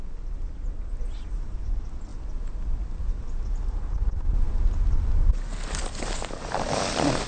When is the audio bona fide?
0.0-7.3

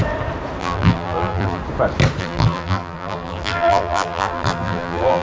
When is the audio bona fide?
0.0-0.6; 1.6-2.2

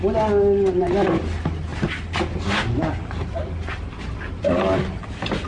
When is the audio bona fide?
0.0-5.5

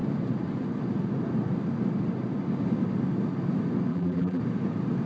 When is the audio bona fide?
0.0-3.9; 4.4-5.1